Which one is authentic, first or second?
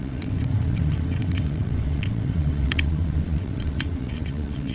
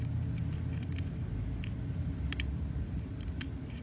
second